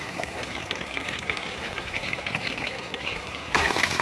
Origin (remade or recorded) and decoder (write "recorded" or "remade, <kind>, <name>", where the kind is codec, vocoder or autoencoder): remade, codec, SNAC